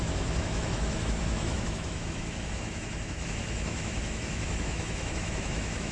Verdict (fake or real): fake